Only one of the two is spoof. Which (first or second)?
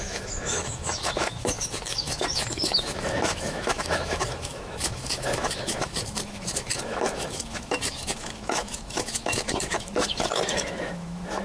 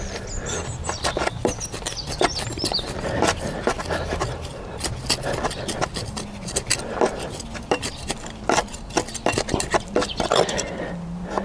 first